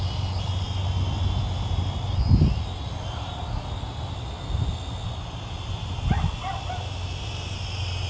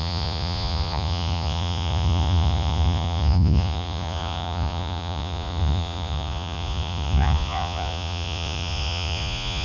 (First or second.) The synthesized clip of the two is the second